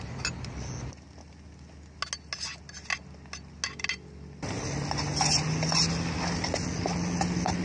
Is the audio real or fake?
real